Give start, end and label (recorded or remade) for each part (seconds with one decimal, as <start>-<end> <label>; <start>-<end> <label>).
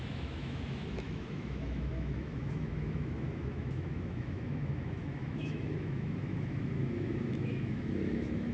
0.0-8.5 remade